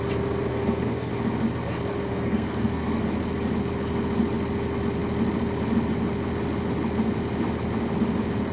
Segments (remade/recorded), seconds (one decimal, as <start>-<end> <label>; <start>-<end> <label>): 0.0-0.5 recorded; 0.5-1.1 remade; 1.1-2.1 recorded; 2.1-3.0 remade; 3.0-8.5 recorded